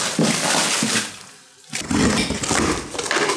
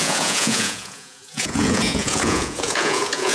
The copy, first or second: second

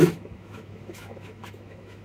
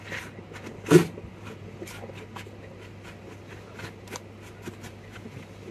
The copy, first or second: first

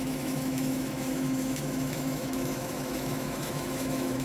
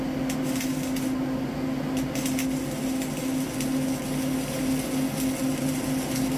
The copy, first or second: first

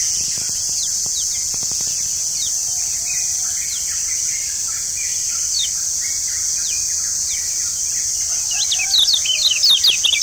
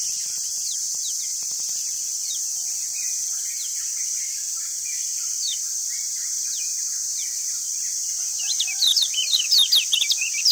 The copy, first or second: second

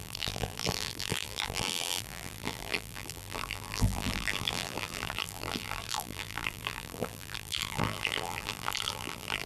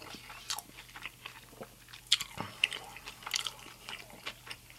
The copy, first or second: first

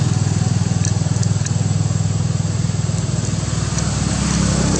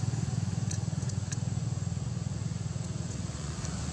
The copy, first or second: second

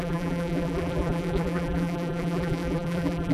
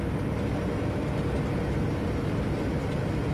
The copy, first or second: first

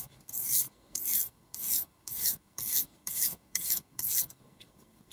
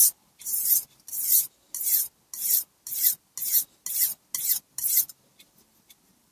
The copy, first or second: first